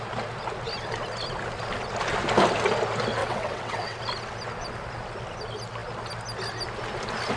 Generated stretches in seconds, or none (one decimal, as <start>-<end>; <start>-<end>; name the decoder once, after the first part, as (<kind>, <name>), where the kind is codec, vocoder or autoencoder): 3.2-4.0 (vocoder, WaveNeXt)